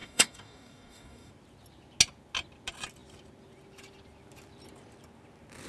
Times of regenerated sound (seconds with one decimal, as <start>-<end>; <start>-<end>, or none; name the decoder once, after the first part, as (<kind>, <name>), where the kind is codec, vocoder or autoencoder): 0.0-1.3 (codec, DAC)